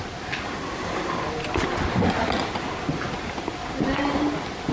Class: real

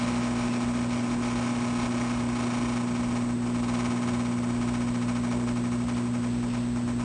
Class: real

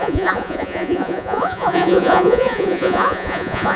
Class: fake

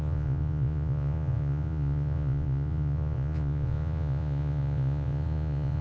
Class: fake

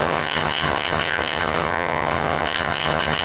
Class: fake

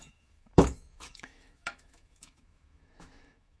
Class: fake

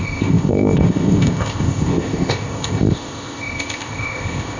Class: fake